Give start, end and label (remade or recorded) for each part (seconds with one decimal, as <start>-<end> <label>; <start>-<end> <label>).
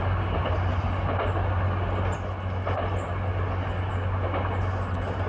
0.0-5.3 recorded